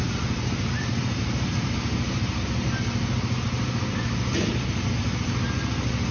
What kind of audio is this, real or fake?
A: real